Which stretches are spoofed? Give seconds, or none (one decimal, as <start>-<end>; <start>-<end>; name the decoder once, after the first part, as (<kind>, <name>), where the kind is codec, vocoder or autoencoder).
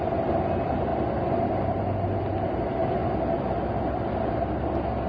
none